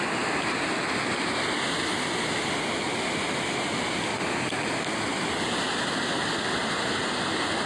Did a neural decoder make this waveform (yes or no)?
no